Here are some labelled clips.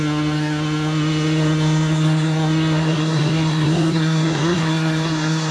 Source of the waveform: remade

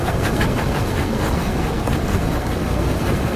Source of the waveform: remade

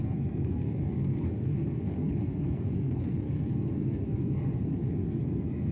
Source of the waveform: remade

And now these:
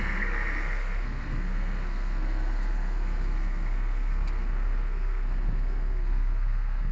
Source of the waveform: remade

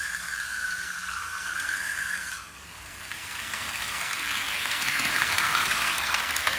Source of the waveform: remade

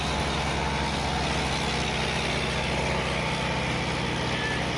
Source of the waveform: recorded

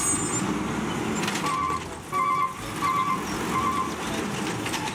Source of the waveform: recorded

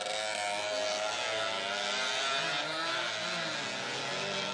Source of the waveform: recorded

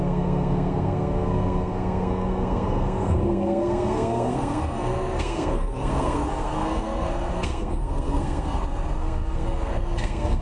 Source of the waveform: remade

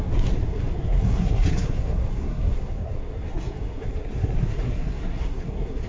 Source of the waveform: remade